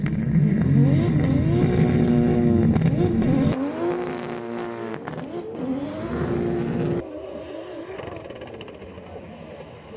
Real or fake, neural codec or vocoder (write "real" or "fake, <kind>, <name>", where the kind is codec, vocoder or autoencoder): real